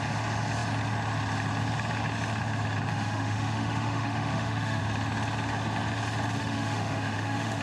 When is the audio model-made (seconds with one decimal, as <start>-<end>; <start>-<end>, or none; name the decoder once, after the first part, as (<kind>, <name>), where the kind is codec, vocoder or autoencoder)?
2.9-4.8 (autoencoder, DAC-VAE); 6.4-7.6

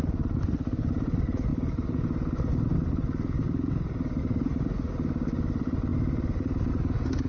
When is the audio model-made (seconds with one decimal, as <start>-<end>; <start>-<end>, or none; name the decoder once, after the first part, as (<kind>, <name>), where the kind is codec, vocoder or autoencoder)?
none

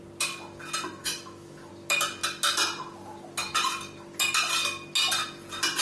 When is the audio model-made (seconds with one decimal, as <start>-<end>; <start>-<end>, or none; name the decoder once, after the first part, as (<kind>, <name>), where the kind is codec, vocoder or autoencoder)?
1.0-1.7 (autoencoder, DAC-VAE)

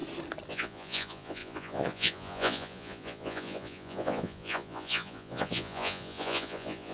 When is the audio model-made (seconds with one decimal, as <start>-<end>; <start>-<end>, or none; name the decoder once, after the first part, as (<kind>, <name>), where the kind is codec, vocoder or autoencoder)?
0.5-6.9 (vocoder, Vocos)

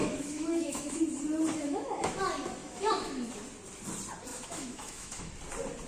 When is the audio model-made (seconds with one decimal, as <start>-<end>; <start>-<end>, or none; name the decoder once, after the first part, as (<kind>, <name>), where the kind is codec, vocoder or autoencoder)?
0.0-1.0 (autoencoder, DAC-VAE); 1.6-2.2; 2.6-3.3; 4.3-5.3